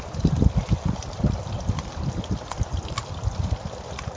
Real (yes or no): yes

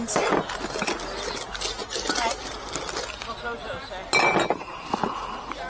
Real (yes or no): yes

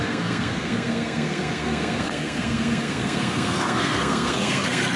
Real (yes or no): no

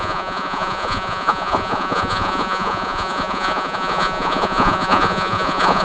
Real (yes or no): no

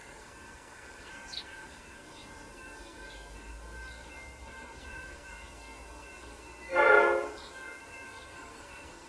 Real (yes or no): no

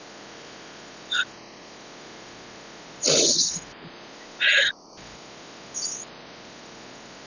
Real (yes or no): no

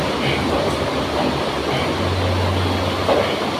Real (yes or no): yes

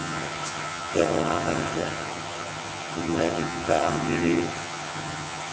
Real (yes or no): no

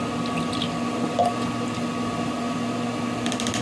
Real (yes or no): yes